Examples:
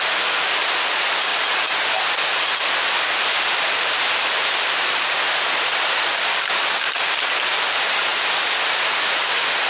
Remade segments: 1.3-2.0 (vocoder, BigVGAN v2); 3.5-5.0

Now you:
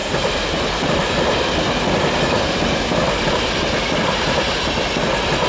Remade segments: 0.0-3.3 (vocoder, BigVGAN v2)

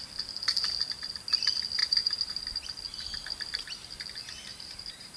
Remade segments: 1.8-2.3 (vocoder, BigVGAN v2); 4.5-5.2

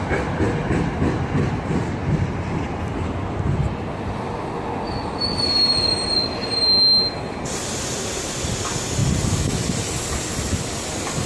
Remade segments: none

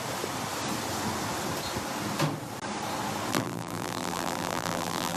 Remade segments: 3.3-5.2 (vocoder, BigVGAN v2)

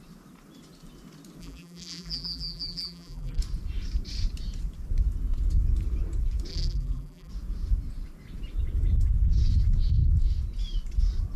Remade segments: 1.4-3.4 (vocoder, BigVGAN v2); 6.5-7.3

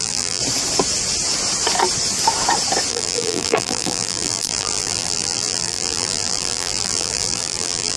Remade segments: 0.0-0.4 (vocoder, BigVGAN v2); 2.9-8.0